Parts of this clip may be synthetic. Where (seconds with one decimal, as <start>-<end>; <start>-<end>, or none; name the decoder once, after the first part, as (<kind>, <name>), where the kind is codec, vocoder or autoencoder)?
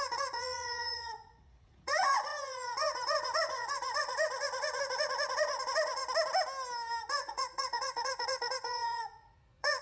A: 0.0-6.0 (vocoder, Vocos); 7.0-9.8